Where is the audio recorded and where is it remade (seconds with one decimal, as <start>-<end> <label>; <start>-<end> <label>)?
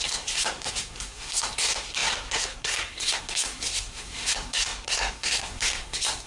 0.0-6.3 remade